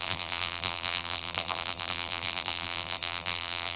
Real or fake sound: fake